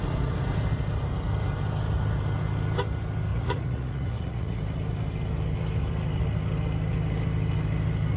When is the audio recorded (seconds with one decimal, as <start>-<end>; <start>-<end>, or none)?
0.0-3.3; 4.6-8.2